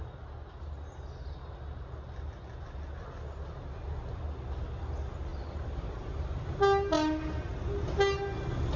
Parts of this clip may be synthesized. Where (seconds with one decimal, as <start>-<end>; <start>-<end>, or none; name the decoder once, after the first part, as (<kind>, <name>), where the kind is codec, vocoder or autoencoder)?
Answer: 5.3-6.5 (vocoder, BigVGAN v2)